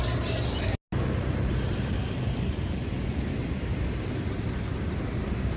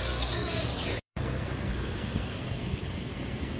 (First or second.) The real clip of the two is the first